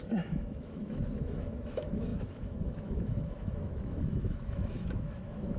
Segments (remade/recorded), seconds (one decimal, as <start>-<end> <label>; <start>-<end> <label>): 0.0-5.6 remade